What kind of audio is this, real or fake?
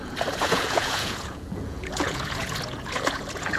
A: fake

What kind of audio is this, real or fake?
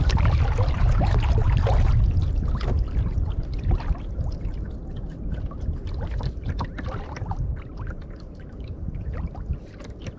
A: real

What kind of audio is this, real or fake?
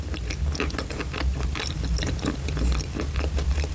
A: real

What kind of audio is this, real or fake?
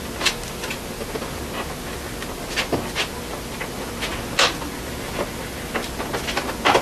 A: real